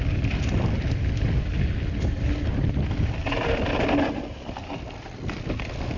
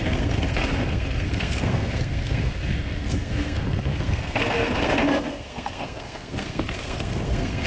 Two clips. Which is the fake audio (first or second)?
second